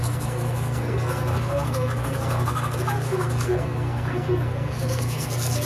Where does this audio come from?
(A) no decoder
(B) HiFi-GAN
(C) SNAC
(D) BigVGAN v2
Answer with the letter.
C